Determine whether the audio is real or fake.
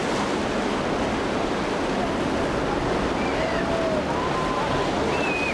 real